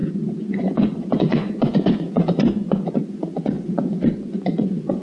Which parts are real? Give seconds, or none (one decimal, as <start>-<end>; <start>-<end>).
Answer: none